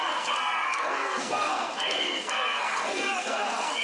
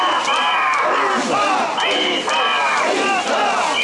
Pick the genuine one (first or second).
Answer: second